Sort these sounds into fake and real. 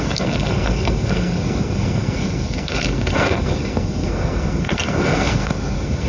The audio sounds fake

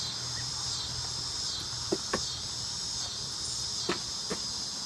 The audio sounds fake